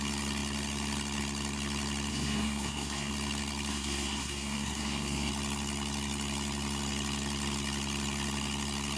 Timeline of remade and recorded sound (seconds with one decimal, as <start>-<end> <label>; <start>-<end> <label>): 0.0-2.1 recorded; 2.1-3.1 remade; 3.1-3.7 recorded; 3.7-5.3 remade; 5.3-9.0 recorded